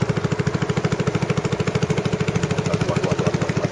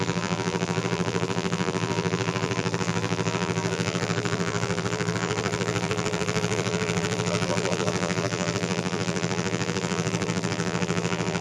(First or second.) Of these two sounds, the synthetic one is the second